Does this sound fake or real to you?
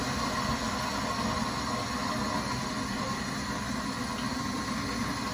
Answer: real